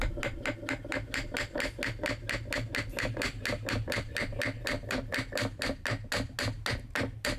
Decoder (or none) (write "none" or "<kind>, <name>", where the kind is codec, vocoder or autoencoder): none